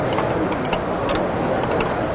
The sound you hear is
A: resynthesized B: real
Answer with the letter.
B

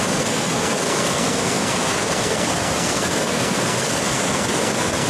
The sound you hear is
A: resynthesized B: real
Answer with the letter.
A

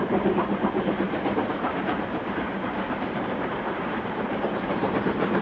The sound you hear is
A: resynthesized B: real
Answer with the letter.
A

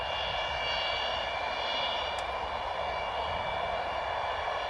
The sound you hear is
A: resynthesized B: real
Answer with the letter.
B